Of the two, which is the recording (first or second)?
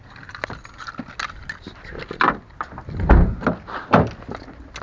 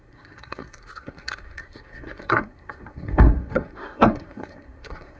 first